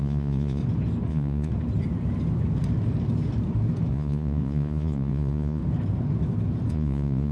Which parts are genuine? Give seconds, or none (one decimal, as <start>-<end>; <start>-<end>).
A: 0.6-1.1; 1.5-3.9; 5.6-6.7